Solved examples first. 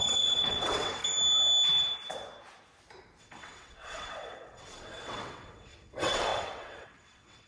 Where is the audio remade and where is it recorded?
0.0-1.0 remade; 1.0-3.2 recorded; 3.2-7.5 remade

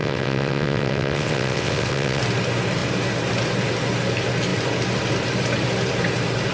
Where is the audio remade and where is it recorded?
0.0-2.2 remade; 2.2-6.5 recorded

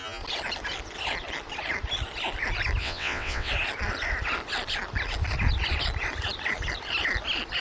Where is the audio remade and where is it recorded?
0.0-2.8 recorded; 2.8-3.5 remade; 3.5-7.6 recorded